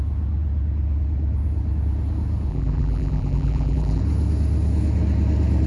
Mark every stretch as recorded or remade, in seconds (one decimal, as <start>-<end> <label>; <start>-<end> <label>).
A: 0.0-2.5 recorded; 2.5-4.0 remade; 4.0-5.7 recorded